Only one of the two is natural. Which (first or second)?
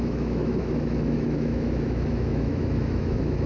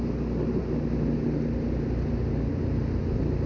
second